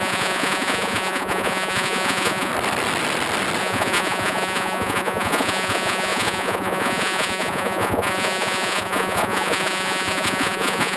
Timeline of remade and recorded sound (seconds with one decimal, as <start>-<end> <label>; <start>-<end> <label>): 0.0-2.5 remade; 2.5-3.6 recorded; 3.6-11.0 remade